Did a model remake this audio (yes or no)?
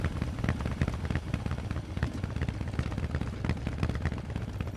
no